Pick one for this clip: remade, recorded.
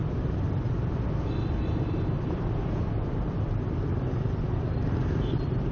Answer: recorded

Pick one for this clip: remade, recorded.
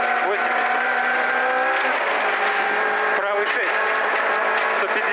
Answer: recorded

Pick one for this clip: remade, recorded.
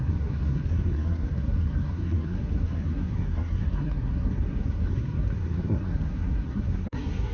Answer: remade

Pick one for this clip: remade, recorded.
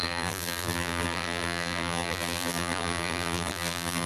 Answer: remade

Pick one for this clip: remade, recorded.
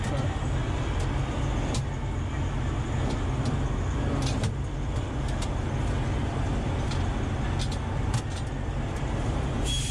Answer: recorded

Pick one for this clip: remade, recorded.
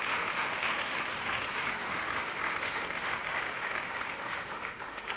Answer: remade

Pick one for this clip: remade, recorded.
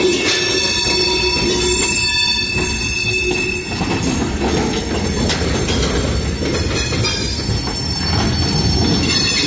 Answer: recorded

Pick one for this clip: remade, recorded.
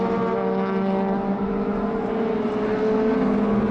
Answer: recorded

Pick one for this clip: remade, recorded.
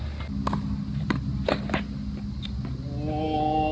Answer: recorded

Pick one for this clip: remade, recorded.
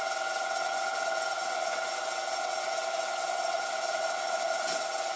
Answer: remade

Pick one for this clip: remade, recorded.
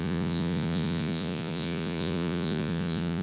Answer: remade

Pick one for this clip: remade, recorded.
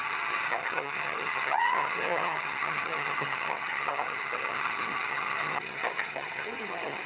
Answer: remade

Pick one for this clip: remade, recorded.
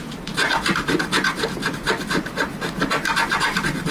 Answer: remade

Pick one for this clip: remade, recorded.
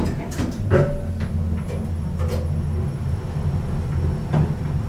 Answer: recorded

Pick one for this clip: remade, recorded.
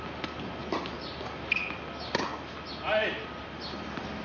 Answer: recorded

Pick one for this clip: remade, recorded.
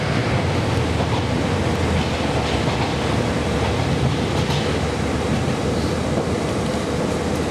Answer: recorded